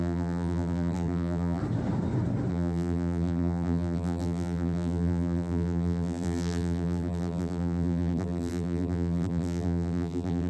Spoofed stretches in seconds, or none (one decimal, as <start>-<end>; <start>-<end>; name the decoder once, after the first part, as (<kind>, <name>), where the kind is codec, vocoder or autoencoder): 0.0-1.6 (vocoder, BigVGAN v2); 2.5-10.5